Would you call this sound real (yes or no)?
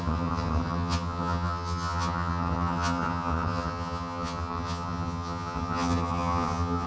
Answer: no